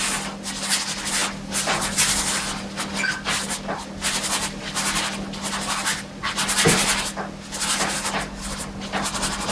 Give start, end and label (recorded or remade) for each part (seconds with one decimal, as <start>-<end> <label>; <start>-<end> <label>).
0.0-9.5 recorded